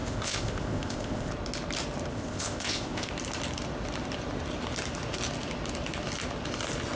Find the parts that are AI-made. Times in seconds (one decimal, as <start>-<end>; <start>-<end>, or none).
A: 0.0-1.3; 2.1-3.1

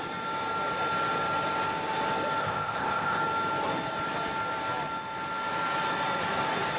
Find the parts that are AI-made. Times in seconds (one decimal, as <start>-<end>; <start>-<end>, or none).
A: 2.4-3.2

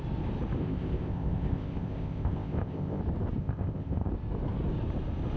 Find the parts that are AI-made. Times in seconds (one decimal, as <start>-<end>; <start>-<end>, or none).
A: 0.6-3.0; 3.4-4.1

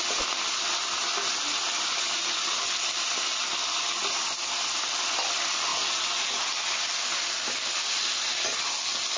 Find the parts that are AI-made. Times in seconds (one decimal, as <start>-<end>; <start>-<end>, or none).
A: none

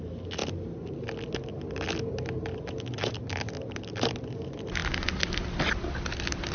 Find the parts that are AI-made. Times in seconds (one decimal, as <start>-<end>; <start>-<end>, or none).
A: none

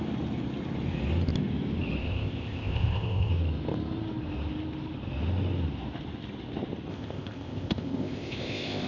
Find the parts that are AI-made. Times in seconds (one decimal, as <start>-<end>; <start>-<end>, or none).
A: 2.0-3.3; 6.9-8.9

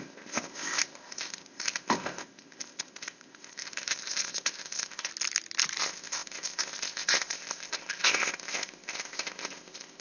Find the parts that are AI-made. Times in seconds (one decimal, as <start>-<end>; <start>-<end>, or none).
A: 0.0-5.1; 5.8-10.0

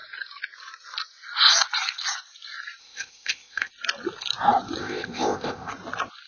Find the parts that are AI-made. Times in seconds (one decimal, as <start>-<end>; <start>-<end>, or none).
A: 2.8-3.7; 4.8-5.7